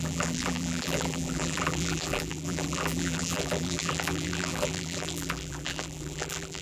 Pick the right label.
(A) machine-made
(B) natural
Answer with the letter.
A